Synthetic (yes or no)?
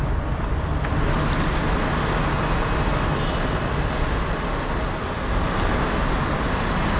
no